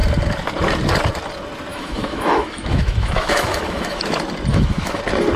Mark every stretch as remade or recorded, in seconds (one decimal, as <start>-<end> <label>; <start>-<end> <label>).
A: 0.0-1.7 recorded; 1.7-4.0 remade; 4.0-4.5 recorded; 4.5-5.0 remade; 5.0-5.4 recorded